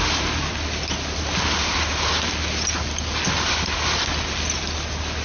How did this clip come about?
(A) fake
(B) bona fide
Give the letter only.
B